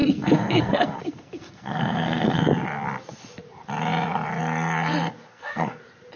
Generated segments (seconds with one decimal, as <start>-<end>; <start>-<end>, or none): 0.0-2.4; 5.3-5.8